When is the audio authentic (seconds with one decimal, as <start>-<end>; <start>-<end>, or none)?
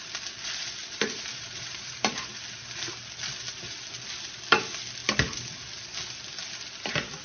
0.0-0.8; 2.1-7.2